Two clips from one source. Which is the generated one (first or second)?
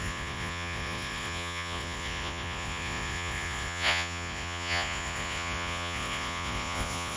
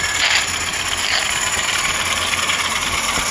first